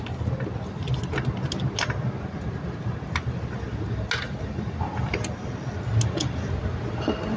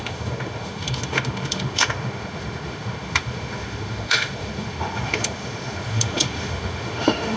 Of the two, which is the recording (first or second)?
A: first